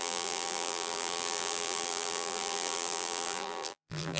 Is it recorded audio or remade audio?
remade